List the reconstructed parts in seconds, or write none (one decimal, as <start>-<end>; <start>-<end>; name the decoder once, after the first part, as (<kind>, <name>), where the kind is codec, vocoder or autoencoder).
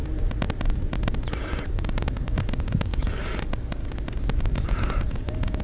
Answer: 1.8-3.8 (codec, DAC); 4.4-5.6